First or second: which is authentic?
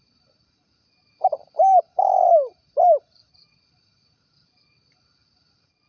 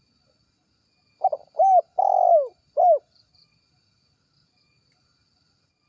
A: second